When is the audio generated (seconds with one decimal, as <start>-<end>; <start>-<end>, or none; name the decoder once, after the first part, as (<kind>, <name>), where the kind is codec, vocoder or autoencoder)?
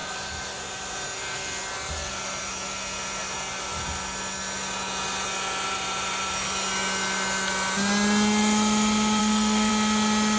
9.2-9.7 (codec, SNAC)